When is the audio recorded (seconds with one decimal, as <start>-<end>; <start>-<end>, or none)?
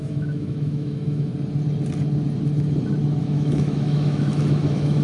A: 1.3-3.2